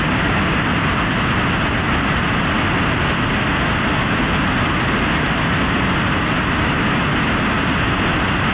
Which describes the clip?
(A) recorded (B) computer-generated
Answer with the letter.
A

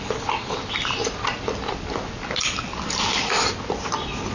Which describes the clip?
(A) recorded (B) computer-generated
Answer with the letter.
A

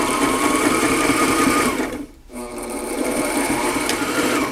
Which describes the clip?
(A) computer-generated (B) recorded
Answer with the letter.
A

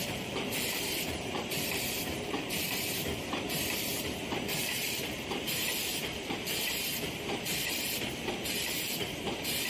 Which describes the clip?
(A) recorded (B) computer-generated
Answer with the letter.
B